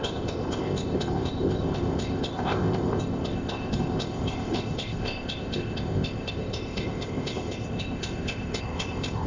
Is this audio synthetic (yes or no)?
yes